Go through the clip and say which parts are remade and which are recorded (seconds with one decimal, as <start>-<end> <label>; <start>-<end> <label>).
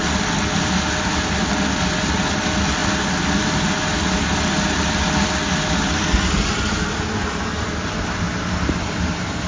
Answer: 0.0-9.5 recorded